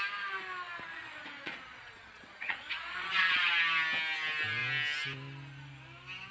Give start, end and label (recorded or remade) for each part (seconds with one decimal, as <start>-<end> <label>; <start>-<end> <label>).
0.0-0.9 recorded; 0.9-3.5 remade; 3.5-6.3 recorded